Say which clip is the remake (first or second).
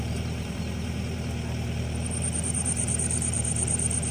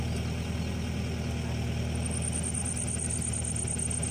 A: first